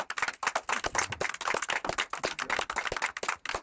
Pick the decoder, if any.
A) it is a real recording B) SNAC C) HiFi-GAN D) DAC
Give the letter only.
A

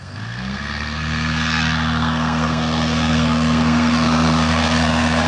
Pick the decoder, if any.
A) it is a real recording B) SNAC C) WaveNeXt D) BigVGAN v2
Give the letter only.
B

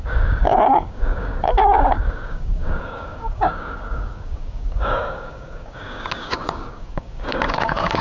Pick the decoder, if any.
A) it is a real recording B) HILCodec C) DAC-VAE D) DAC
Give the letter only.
D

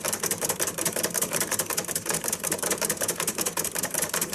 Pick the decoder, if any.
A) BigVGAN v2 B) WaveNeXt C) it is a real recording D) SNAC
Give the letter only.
A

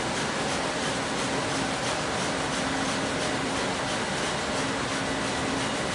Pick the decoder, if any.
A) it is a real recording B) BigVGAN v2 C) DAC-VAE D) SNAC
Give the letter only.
A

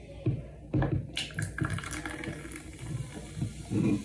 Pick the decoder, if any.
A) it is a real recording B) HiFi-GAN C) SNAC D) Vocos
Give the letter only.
A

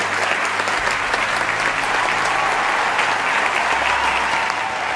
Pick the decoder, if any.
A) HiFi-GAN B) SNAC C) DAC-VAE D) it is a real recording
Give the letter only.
D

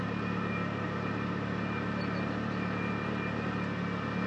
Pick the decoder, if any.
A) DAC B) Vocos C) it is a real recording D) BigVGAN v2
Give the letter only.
C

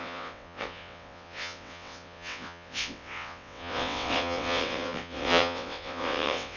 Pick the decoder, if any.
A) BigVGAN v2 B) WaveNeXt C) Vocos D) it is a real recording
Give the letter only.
B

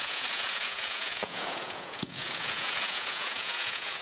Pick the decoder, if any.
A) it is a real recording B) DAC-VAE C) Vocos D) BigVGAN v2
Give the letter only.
C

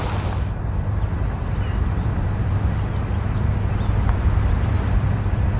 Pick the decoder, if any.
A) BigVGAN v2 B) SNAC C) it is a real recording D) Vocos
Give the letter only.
C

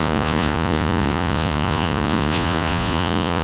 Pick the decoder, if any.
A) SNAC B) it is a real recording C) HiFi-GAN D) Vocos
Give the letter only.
D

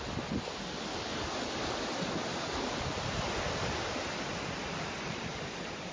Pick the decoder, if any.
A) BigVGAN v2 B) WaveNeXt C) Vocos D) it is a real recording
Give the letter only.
D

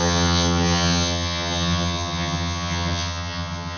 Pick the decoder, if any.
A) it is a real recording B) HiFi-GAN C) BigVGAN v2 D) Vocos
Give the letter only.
B